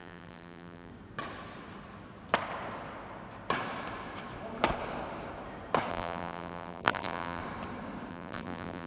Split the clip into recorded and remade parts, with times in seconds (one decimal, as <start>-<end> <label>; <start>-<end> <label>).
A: 0.0-0.9 remade; 0.9-5.9 recorded; 5.9-7.4 remade; 7.4-8.1 recorded; 8.1-8.9 remade